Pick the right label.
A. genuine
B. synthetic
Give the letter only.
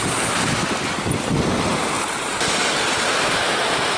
A